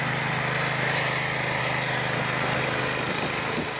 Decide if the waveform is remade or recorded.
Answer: recorded